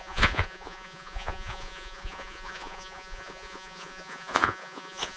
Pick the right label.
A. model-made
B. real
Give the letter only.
A